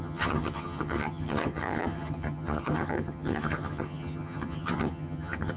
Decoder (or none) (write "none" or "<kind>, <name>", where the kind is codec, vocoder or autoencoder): vocoder, HiFi-GAN